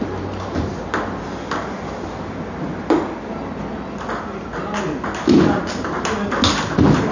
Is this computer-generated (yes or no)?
no